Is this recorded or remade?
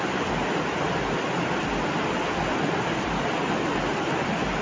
recorded